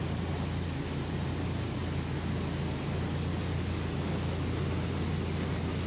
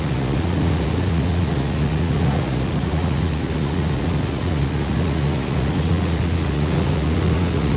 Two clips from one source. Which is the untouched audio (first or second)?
first